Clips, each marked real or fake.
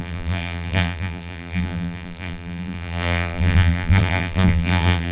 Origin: fake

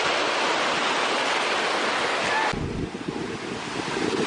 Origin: real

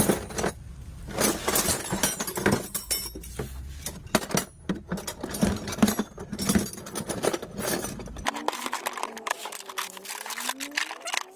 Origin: real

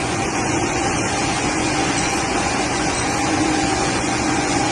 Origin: fake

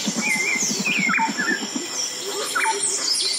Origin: real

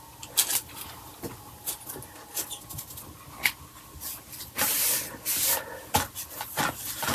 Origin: real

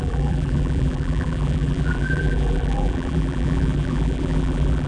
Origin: fake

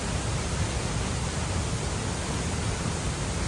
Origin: real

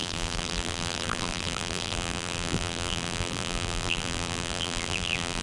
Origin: fake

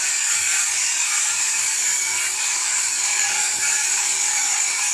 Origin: fake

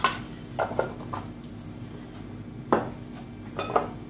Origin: real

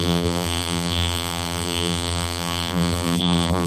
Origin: fake